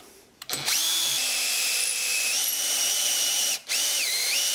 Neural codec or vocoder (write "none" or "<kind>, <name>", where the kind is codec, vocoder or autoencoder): vocoder, BigVGAN v2